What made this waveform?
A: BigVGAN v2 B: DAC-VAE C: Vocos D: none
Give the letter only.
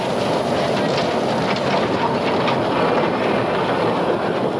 D